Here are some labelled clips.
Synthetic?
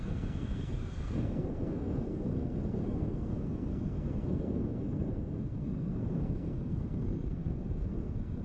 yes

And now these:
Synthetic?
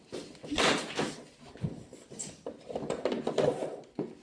no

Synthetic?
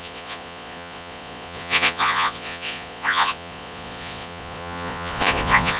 yes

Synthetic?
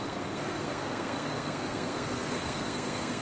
yes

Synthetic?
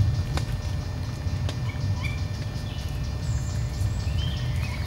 no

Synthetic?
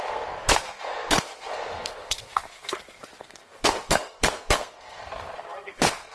yes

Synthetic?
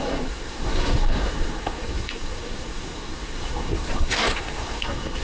yes